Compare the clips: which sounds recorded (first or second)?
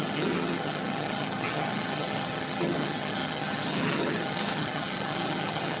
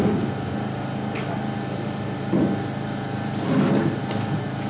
second